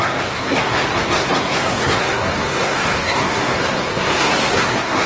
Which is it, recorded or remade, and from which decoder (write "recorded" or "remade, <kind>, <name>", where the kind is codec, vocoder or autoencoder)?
remade, codec, SNAC